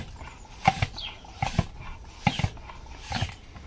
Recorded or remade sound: recorded